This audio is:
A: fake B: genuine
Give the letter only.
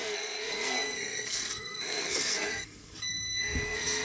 A